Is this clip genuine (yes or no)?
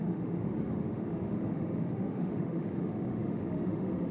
no